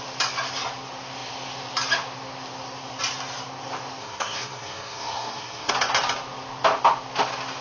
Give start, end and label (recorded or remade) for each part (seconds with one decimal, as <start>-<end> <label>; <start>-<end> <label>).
0.0-4.0 recorded; 4.0-5.7 remade; 5.7-7.6 recorded